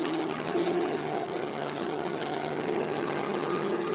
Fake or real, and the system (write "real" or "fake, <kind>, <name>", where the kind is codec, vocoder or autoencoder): fake, vocoder, HiFi-GAN